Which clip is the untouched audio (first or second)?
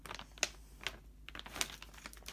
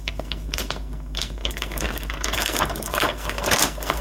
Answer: first